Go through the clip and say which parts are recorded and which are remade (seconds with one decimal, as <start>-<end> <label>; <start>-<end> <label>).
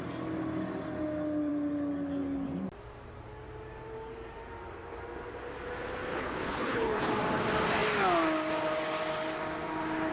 0.0-6.1 recorded; 6.1-7.1 remade; 7.1-10.1 recorded